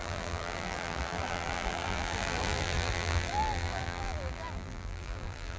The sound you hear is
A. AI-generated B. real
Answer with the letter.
A